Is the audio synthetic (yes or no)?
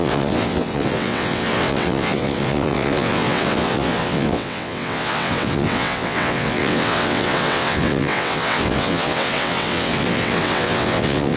yes